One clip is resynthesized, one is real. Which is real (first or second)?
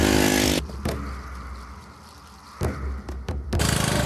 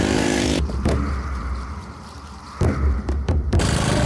first